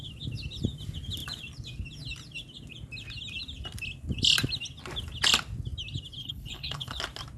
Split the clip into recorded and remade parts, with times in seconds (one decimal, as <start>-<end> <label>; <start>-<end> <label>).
0.0-6.2 recorded; 6.2-7.0 remade; 7.0-7.4 recorded